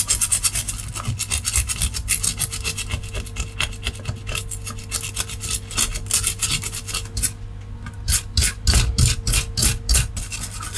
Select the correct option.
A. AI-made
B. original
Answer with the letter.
B